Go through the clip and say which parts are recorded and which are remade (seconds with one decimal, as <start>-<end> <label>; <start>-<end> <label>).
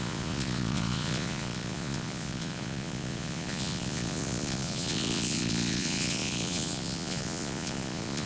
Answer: 0.0-8.3 remade